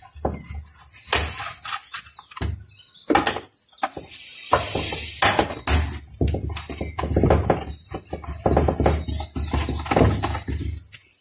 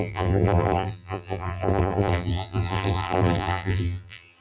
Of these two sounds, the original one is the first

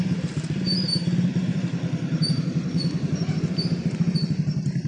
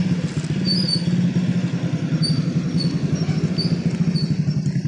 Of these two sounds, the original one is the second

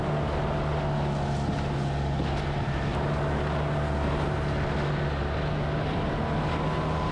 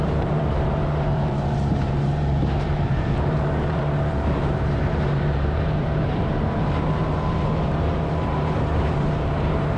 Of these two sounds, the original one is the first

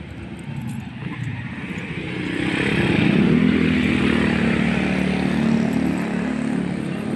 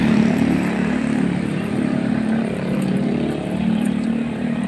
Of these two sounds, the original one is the first